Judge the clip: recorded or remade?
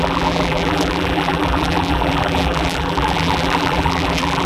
remade